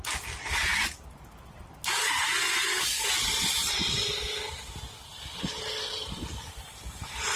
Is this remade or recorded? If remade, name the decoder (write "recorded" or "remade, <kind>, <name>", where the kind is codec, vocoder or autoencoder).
recorded